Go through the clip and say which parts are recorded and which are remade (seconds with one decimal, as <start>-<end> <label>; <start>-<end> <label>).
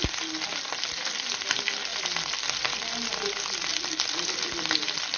0.0-5.2 recorded